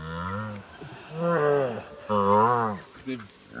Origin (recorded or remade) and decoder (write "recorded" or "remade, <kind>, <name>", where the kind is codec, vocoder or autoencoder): recorded